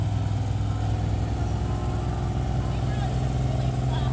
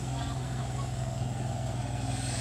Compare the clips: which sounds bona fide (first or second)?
first